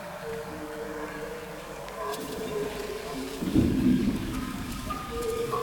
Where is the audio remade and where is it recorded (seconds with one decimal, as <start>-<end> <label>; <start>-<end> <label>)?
0.0-2.1 remade; 2.1-2.9 recorded; 2.9-5.6 remade